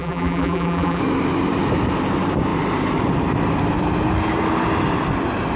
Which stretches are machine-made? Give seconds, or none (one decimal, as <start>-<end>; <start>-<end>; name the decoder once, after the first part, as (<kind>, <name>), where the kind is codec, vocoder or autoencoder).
0.0-1.0 (vocoder, BigVGAN v2)